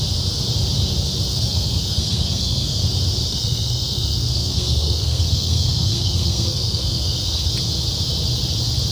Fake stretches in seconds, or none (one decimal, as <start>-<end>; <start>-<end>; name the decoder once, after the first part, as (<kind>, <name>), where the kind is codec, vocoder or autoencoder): 1.3-2.8 (codec, SNAC); 3.3-7.5